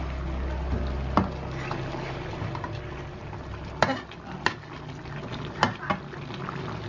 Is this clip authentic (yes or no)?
yes